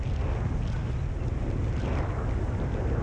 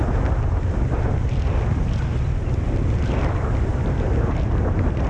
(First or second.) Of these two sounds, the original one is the first